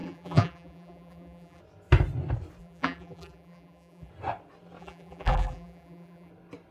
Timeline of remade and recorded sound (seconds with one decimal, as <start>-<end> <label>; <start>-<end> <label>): 0.0-1.6 remade; 1.6-2.6 recorded; 2.6-4.1 remade; 4.1-4.8 recorded; 4.8-6.3 remade; 6.3-6.7 recorded